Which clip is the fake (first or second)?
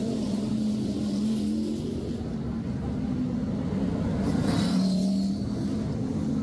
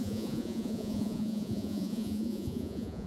second